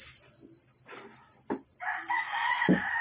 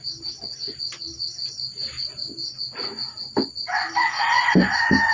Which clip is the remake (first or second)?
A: first